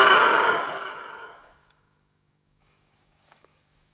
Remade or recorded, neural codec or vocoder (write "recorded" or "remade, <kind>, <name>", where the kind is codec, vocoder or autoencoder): remade, codec, DAC